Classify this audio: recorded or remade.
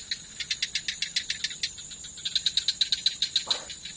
recorded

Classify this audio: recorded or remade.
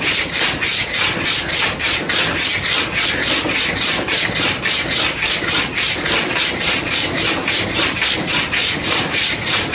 recorded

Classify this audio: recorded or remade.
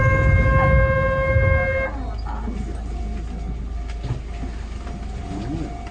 recorded